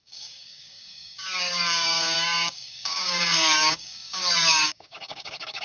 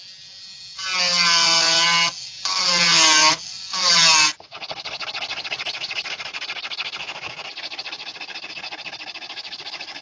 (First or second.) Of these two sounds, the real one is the second